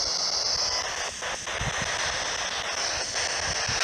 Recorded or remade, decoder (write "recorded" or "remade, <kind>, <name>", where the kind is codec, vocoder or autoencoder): recorded